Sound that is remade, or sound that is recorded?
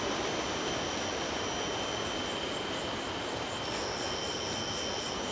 recorded